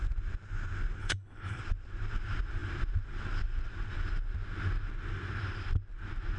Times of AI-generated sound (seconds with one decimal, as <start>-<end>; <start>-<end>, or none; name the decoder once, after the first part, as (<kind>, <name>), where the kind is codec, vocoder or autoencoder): 1.0-1.6 (codec, HILCodec)